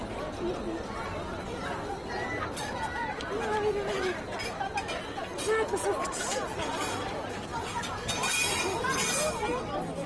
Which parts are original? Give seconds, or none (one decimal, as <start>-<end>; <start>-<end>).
0.0-7.5; 9.1-10.1